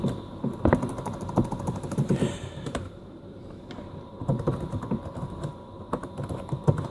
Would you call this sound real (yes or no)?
no